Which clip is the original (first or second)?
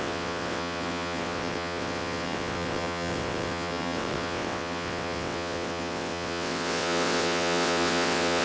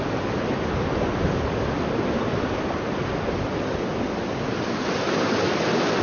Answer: second